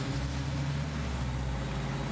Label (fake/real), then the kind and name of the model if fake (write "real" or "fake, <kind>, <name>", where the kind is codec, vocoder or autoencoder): real